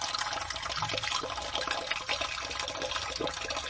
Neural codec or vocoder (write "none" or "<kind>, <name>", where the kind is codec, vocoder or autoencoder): none